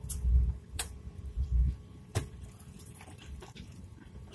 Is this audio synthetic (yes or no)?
yes